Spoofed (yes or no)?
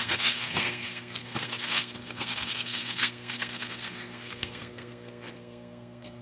yes